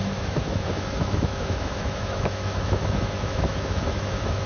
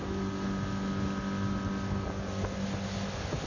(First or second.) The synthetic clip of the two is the first